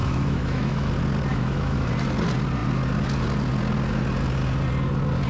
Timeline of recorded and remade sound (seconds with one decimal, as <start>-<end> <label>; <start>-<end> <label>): 0.0-0.9 remade; 0.9-1.3 recorded; 1.3-1.9 remade; 1.9-5.3 recorded

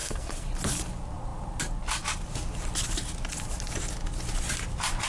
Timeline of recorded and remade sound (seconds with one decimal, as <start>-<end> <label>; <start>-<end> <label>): 0.0-0.5 remade; 0.5-5.1 recorded

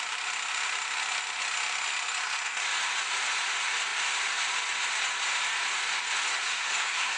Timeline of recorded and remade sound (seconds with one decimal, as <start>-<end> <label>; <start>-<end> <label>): 0.0-6.3 recorded; 6.3-7.2 remade

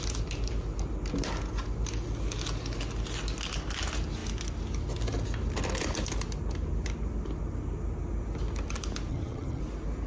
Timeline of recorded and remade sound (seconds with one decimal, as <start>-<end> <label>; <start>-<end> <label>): 0.0-9.1 recorded; 9.1-9.6 remade; 9.6-10.1 recorded

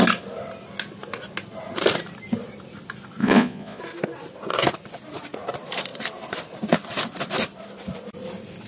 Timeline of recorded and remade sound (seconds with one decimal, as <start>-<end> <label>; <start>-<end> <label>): 0.0-3.2 recorded; 3.2-3.8 remade; 3.8-8.7 recorded

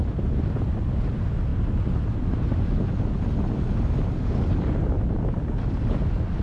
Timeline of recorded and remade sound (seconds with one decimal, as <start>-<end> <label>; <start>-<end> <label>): 0.0-6.4 recorded

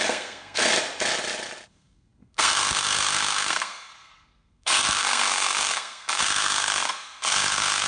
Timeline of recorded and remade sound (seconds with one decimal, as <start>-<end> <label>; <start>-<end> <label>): 0.0-0.7 remade; 0.7-1.7 recorded; 1.7-7.9 remade